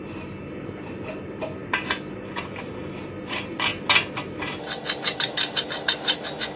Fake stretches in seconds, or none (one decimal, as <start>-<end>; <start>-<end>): none